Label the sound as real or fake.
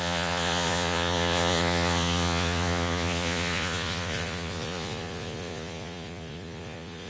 fake